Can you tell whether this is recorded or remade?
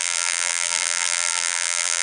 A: remade